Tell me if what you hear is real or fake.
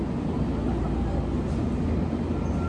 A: real